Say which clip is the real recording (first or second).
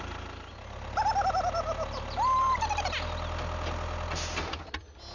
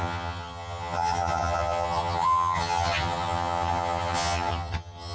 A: first